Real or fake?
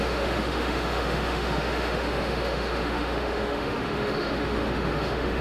fake